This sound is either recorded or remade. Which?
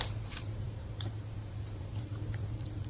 remade